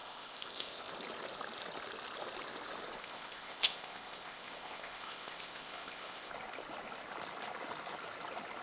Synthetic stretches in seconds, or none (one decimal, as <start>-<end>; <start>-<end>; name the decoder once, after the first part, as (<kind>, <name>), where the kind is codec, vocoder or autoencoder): 0.0-0.9 (codec, ZipCodec); 3.0-6.3